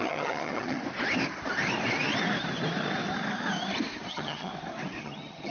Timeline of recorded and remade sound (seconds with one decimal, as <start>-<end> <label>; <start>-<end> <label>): 0.0-0.8 remade; 0.8-4.1 recorded; 4.1-4.5 remade; 4.5-5.0 recorded; 5.0-5.5 remade